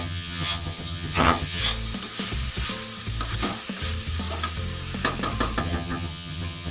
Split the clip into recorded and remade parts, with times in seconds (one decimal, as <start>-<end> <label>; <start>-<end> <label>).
0.0-1.6 remade; 1.6-5.6 recorded; 5.6-6.7 remade